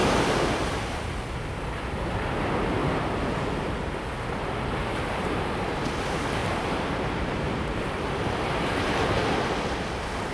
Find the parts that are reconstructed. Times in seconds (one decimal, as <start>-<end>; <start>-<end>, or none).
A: 0.0-1.0; 4.9-5.9; 6.4-9.4